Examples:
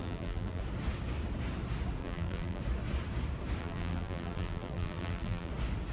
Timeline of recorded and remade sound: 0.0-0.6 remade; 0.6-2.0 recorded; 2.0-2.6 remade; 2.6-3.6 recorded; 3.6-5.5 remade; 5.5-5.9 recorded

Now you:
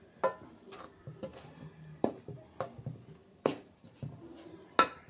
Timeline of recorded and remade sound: 0.0-1.3 recorded; 1.3-2.3 remade; 2.3-3.2 recorded; 3.2-4.3 remade; 4.3-5.1 recorded

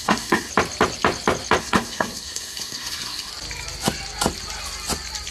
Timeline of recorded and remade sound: 0.0-0.5 remade; 0.5-1.6 recorded; 1.6-3.3 remade; 3.3-5.3 recorded